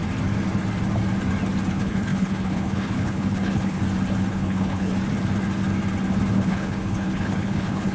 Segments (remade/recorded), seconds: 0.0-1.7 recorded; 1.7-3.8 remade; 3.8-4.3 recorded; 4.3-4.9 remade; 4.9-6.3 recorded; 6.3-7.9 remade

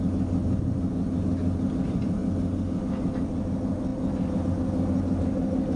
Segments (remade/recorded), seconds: 0.0-5.8 recorded

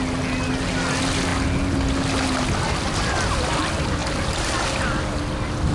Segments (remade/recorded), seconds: 0.0-5.7 recorded

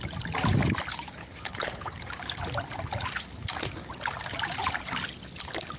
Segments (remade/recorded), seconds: 0.0-1.2 recorded; 1.2-1.9 remade; 1.9-5.8 recorded

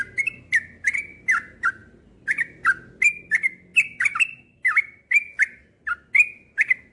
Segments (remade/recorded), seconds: 0.0-6.9 recorded